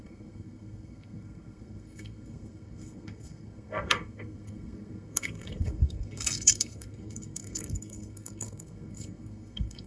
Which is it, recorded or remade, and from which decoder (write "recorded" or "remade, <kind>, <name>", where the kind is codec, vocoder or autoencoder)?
remade, codec, SNAC